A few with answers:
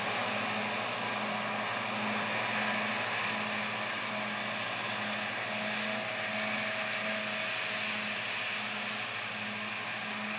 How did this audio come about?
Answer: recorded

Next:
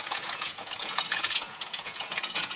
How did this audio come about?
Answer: remade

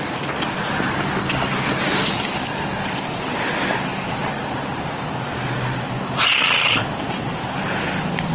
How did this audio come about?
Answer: recorded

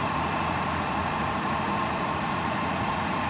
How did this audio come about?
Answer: remade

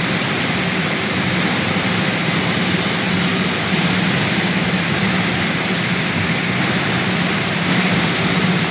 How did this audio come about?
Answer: recorded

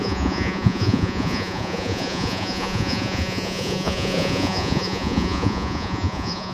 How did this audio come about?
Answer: remade